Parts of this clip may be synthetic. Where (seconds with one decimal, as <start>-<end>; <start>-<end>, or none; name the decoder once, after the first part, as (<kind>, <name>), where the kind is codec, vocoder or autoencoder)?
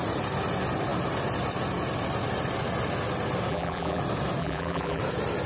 3.5-4.0 (vocoder, BigVGAN v2); 4.4-5.0